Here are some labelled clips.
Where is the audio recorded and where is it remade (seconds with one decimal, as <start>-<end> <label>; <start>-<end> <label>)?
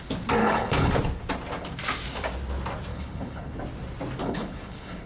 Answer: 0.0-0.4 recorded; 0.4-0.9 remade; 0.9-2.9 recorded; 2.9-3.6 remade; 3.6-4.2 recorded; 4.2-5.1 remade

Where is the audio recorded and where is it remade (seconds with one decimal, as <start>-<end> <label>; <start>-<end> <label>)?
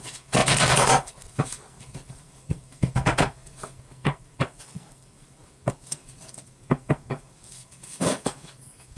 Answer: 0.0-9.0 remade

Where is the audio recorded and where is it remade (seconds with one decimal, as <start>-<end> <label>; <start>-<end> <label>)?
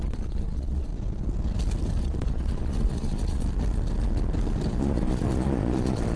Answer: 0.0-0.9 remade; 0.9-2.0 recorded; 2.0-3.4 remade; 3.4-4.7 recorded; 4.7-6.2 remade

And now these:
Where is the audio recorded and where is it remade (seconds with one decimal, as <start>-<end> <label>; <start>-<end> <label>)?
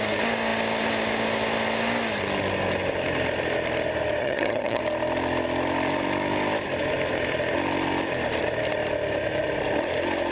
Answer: 0.0-4.2 recorded; 4.2-4.8 remade; 4.8-10.3 recorded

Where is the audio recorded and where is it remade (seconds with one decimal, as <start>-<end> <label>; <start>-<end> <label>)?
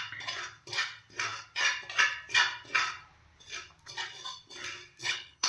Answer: 0.0-5.0 recorded; 5.0-5.5 remade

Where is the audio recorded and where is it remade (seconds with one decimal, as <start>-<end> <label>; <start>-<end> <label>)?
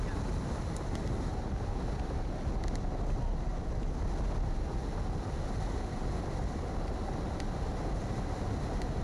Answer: 0.0-9.0 recorded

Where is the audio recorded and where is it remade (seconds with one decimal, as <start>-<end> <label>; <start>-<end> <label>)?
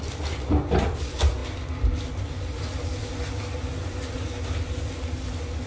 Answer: 0.0-5.7 recorded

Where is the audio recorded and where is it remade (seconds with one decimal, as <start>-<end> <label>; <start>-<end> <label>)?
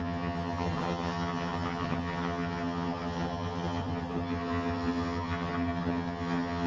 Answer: 0.0-6.7 remade